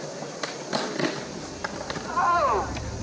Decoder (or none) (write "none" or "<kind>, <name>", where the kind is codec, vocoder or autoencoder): none